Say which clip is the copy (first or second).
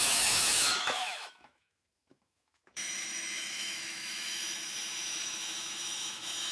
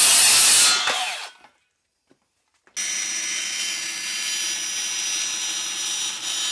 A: first